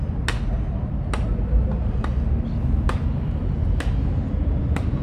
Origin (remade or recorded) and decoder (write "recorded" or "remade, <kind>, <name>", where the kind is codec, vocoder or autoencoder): recorded